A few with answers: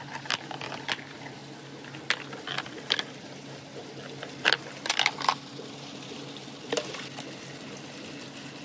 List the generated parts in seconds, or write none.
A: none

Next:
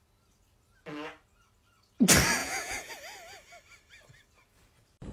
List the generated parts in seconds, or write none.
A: 2.4-2.9 (vocoder, Vocos)

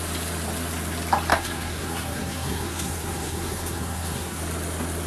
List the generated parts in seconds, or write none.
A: 1.3-4.4 (codec, SNAC)

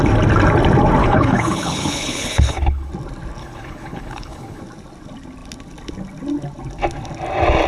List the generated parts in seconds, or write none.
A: 1.0-2.9 (codec, HILCodec); 3.4-4.6

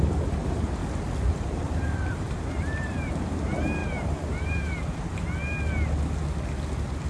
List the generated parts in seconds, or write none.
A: 0.0-0.8 (vocoder, BigVGAN v2); 1.3-5.1

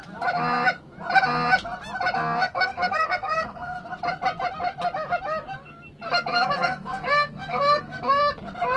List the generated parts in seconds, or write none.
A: 2.4-3.8 (codec, SNAC); 6.3-8.2

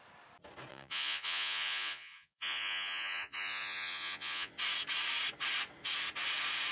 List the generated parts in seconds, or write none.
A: 0.7-4.5 (vocoder, Vocos)